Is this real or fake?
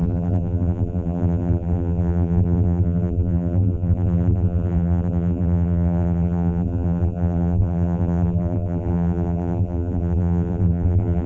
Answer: fake